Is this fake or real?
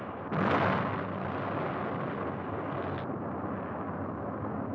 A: real